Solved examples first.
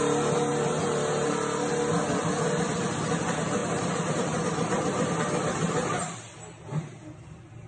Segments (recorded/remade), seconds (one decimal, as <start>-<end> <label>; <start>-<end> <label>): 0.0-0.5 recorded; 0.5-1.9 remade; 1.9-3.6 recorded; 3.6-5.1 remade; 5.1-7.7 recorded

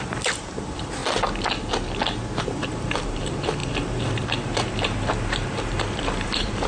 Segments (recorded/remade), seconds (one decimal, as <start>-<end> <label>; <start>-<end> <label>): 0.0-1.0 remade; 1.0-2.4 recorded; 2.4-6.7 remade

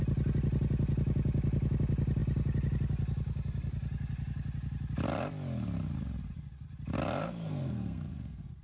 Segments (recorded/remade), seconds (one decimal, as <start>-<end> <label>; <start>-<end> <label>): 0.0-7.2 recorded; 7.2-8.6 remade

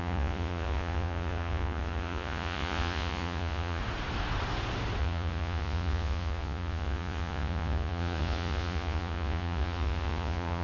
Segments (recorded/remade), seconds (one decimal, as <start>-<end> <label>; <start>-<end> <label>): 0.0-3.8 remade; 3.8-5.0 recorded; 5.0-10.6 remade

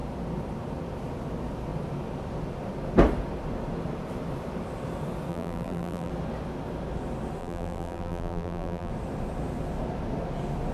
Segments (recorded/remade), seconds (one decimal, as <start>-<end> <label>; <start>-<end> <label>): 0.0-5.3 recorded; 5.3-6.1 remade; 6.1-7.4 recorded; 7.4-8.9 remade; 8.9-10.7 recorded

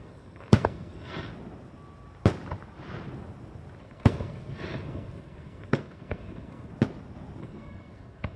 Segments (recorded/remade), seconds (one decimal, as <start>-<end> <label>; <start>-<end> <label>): 0.0-1.3 remade; 1.3-3.8 recorded; 3.8-6.7 remade; 6.7-7.4 recorded; 7.4-8.4 remade

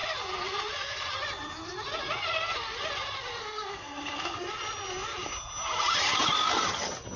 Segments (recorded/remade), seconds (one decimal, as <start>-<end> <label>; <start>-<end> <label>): 0.0-3.4 recorded; 3.4-4.4 remade; 4.4-7.2 recorded

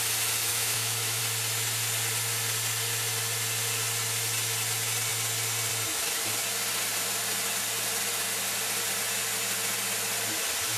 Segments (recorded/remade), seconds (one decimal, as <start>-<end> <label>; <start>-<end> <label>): 0.0-0.5 recorded; 0.5-1.2 remade; 1.2-10.8 recorded